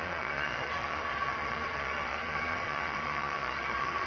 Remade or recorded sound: remade